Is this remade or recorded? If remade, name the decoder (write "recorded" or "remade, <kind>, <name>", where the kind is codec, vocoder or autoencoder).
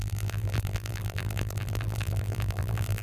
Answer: remade, vocoder, BigVGAN v2